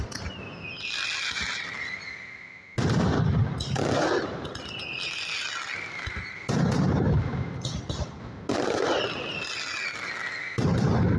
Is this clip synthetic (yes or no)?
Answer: no